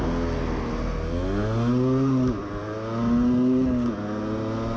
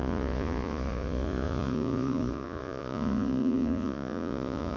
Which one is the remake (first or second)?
second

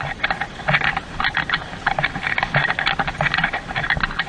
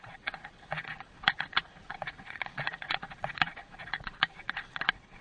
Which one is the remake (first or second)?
second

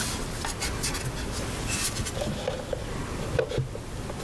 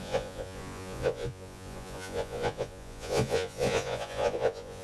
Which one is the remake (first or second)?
second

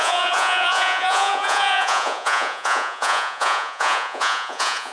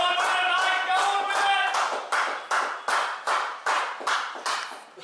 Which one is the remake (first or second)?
first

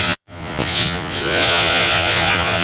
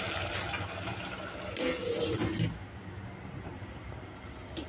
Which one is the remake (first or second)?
first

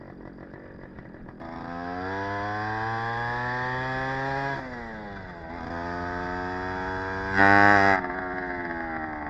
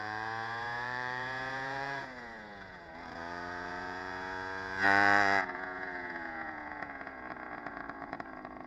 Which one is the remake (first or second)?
second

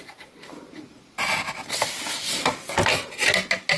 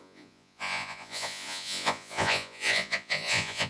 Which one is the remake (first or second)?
second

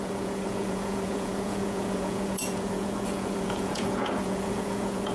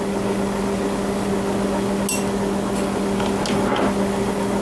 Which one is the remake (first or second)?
first